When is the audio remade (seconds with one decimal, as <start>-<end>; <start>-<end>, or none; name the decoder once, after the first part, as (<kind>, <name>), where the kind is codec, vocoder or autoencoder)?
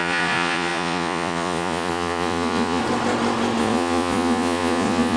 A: 0.0-2.8 (vocoder, Vocos); 3.6-5.2